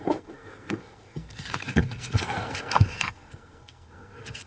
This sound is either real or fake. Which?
fake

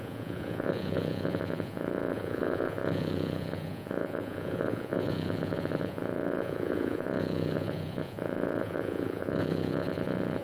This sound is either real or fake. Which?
fake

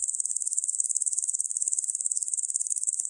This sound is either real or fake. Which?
fake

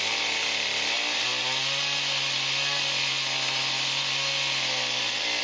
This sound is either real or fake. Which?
real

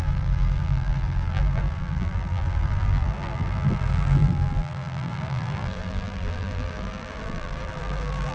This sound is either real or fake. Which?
fake